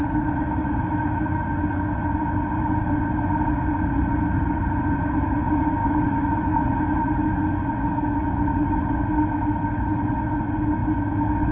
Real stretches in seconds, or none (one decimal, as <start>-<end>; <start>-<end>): 0.0-0.6; 1.7-5.8; 8.8-10.8